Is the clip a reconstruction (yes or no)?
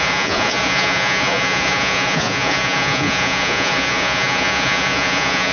yes